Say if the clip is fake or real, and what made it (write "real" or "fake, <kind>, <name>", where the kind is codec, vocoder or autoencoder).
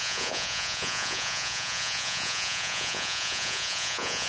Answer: fake, vocoder, Vocos